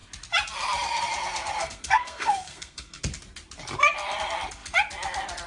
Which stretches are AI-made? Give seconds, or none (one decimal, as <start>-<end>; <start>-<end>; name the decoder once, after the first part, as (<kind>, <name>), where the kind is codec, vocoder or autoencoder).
1.6-3.0 (codec, SNAC)